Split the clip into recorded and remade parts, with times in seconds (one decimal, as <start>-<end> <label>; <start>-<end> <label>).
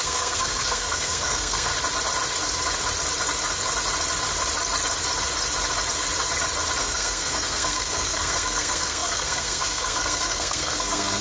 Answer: 0.0-1.7 remade; 1.7-6.8 recorded; 6.8-11.2 remade